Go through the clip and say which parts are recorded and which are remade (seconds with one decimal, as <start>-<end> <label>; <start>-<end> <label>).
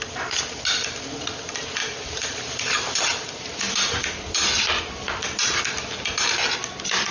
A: 0.0-1.8 recorded; 1.8-4.8 remade; 4.8-7.1 recorded